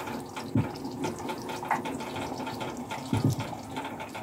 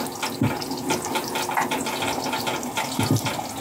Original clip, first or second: second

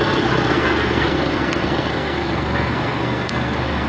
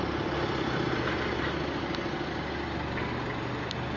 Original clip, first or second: second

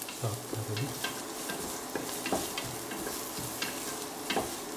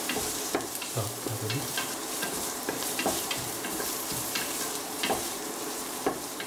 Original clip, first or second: first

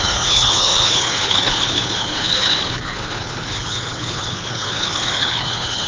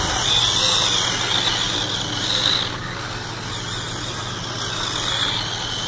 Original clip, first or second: second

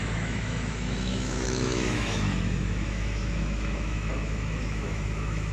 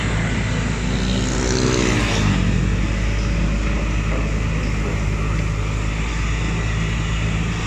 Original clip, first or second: second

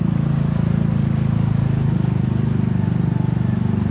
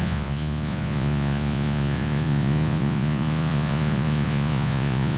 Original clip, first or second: first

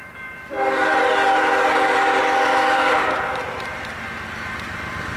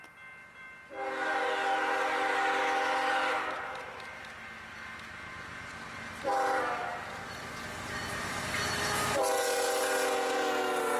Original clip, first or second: second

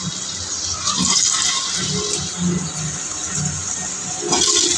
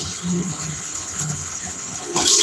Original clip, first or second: first